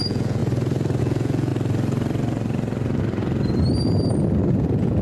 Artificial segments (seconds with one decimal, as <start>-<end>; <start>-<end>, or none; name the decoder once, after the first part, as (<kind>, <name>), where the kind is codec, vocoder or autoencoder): 0.0-0.4 (vocoder, Vocos); 1.0-1.5; 4.5-5.0